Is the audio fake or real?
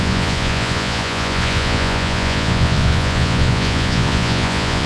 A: fake